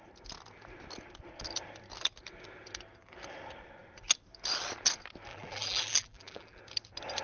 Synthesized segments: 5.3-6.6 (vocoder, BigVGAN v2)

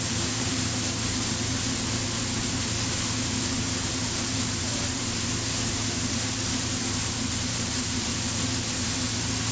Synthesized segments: 0.0-8.1 (vocoder, BigVGAN v2)

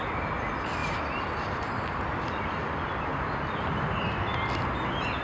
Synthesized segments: none

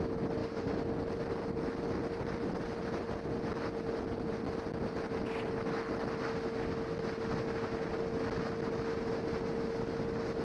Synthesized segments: none

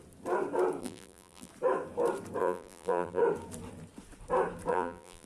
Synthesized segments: 0.8-1.5 (vocoder, BigVGAN v2); 2.4-3.2; 4.7-5.3

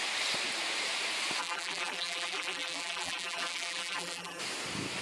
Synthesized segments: 1.4-4.4 (vocoder, BigVGAN v2)